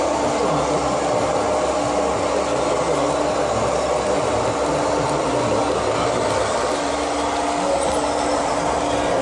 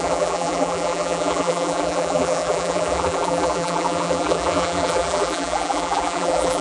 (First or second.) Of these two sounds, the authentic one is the first